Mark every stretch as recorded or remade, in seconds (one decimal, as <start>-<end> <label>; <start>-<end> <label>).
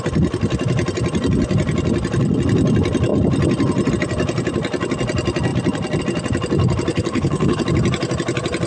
0.0-6.9 recorded; 6.9-7.6 remade; 7.6-8.7 recorded